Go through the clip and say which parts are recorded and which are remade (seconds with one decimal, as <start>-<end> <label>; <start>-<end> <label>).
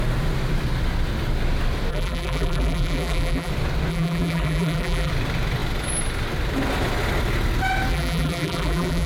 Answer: 0.0-1.9 recorded; 1.9-3.5 remade; 3.5-3.9 recorded; 3.9-5.1 remade; 5.1-7.9 recorded; 7.9-9.1 remade